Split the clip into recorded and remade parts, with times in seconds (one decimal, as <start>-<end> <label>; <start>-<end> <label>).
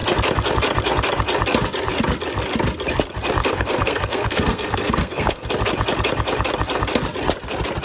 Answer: 0.0-3.4 recorded; 3.4-5.5 remade; 5.5-7.8 recorded